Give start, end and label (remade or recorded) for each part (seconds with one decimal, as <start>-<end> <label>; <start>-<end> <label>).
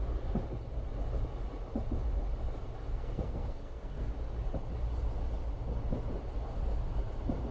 0.0-2.9 recorded; 2.9-4.1 remade; 4.1-7.5 recorded